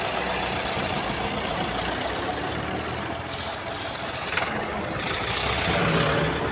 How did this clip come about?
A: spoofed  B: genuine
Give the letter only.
B